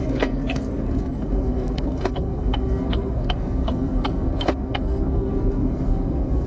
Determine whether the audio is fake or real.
fake